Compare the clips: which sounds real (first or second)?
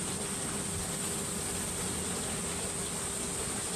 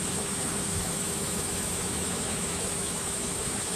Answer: first